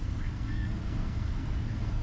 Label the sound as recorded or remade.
remade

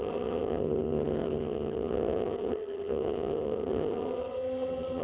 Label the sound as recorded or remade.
remade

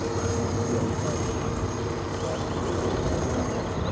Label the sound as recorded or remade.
recorded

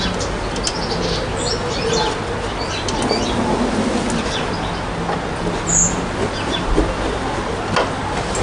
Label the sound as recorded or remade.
recorded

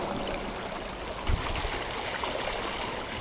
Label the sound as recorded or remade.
recorded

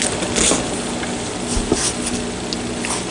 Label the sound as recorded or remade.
recorded